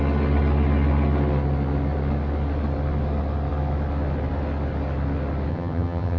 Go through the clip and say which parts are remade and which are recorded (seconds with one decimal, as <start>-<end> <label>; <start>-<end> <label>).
0.0-5.5 recorded; 5.5-6.2 remade